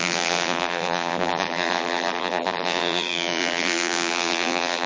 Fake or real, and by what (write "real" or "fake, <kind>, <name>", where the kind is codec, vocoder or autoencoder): fake, vocoder, BigVGAN v2